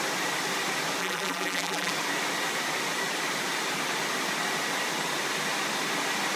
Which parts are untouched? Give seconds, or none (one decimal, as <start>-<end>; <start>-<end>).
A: 0.0-1.0; 1.9-6.4